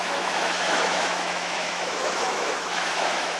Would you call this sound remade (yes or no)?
yes